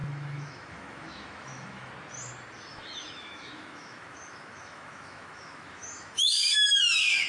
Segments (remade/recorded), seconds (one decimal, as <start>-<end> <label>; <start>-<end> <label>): 0.0-1.9 remade; 1.9-2.7 recorded; 2.7-7.3 remade